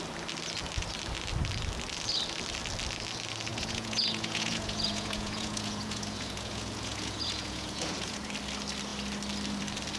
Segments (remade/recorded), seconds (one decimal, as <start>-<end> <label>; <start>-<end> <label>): 0.0-3.5 recorded; 3.5-8.3 remade; 8.3-10.0 recorded